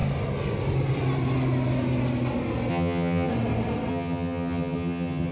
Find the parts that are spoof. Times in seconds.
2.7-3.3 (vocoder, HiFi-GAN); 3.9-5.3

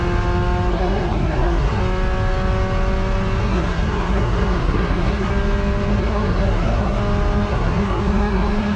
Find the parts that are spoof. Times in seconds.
0.7-1.8 (codec, SNAC); 3.4-5.3; 5.9-7.0; 7.5-8.8

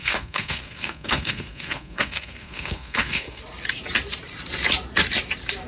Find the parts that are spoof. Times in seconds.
0.0-3.4 (codec, SNAC)

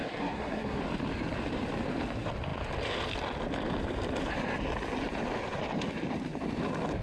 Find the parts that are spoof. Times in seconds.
0.0-0.8 (codec, SNAC)

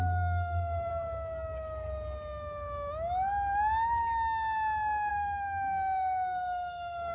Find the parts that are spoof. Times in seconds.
0.0-0.9 (codec, SNAC); 5.1-7.1

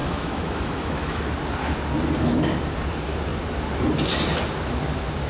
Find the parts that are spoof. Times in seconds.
0.0-1.3 (autoencoder, DAC-VAE)

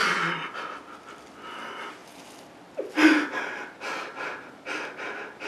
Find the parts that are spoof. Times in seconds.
none

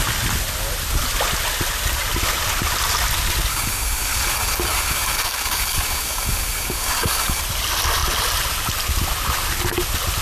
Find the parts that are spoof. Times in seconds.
3.5-7.4 (codec, DAC)